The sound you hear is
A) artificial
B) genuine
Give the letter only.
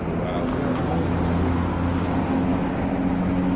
B